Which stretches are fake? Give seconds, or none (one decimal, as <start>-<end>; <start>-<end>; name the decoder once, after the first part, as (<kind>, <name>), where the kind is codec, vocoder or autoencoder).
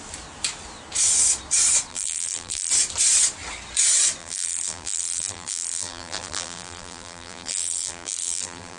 1.9-2.7 (vocoder, BigVGAN v2); 4.2-8.8